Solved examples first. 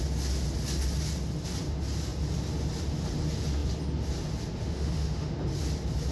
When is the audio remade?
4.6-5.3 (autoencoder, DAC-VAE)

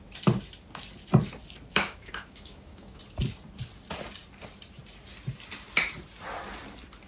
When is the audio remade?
1.7-3.0 (autoencoder, DAC-VAE)